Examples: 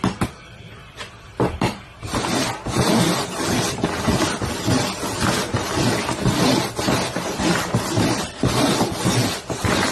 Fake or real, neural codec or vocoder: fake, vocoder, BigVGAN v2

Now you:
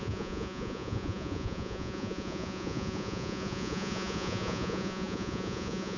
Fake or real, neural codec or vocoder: fake, vocoder, Vocos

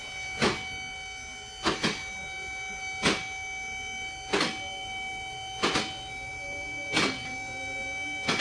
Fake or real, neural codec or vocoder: real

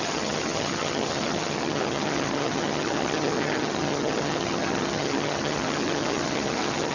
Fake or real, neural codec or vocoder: fake, vocoder, HiFi-GAN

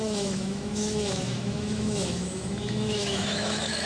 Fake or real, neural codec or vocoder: fake, autoencoder, DAC-VAE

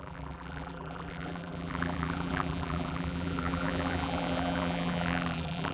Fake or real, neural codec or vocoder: fake, vocoder, BigVGAN v2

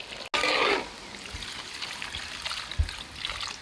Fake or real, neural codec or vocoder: real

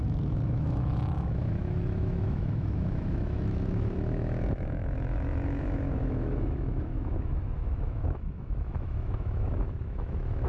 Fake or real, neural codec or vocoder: fake, autoencoder, DAC-VAE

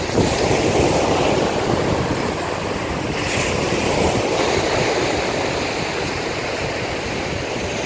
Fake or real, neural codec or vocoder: real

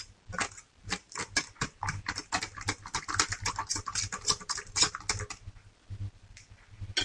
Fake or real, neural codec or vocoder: real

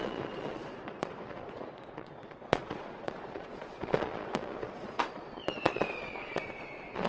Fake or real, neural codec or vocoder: fake, vocoder, Vocos